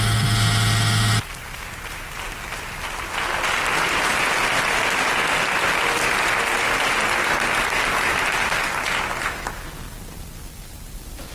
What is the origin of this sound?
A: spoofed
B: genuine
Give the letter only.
B